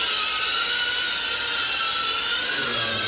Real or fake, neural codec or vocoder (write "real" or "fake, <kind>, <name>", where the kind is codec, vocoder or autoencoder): real